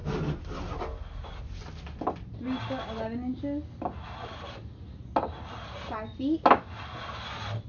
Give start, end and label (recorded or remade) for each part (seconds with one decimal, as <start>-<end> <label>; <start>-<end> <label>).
0.0-7.7 recorded